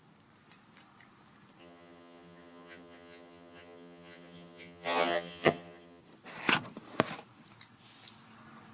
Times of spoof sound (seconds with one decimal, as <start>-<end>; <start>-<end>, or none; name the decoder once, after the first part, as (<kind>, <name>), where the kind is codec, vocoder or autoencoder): 1.6-6.0 (vocoder, HiFi-GAN)